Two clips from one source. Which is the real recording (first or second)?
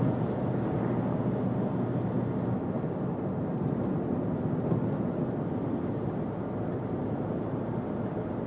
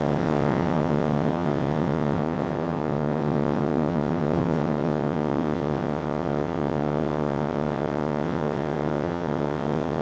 first